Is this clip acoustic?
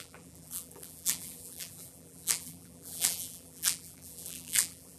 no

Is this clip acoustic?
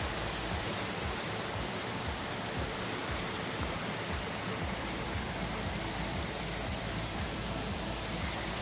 no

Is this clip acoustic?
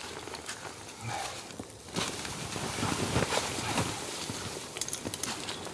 no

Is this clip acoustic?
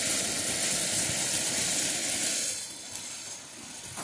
yes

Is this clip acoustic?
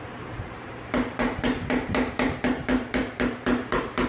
no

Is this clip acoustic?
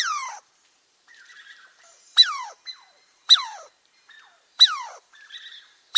no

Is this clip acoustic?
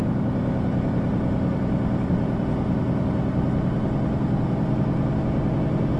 yes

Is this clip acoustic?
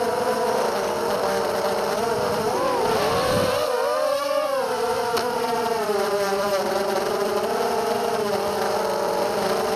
no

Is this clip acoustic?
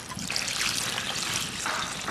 yes